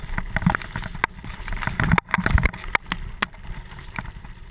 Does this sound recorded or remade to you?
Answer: recorded